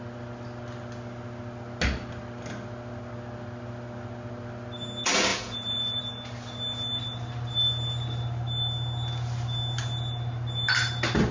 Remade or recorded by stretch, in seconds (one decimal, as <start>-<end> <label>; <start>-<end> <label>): 0.0-5.3 recorded; 5.3-6.0 remade; 6.0-11.3 recorded